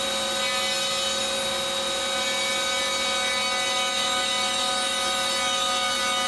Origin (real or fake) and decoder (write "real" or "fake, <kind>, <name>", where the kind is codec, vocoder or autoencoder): real